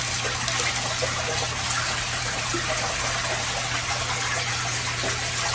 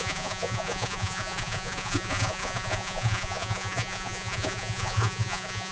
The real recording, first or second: first